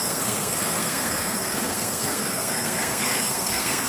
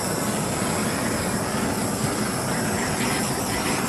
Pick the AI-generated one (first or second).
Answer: first